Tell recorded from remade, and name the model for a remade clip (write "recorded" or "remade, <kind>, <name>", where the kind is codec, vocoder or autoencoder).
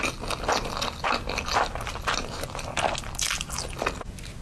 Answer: recorded